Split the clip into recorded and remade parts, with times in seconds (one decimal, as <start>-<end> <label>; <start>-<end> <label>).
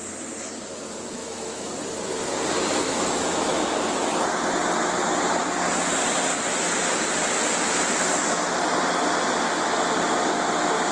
0.0-1.2 recorded; 1.2-1.7 remade; 1.7-2.8 recorded; 2.8-4.0 remade; 4.0-10.9 recorded